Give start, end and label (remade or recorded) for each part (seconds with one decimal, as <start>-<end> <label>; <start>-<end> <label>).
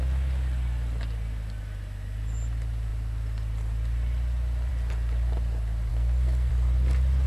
0.0-5.9 recorded; 5.9-6.5 remade; 6.5-7.3 recorded